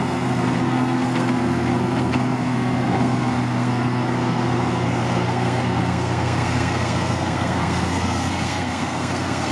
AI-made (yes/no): yes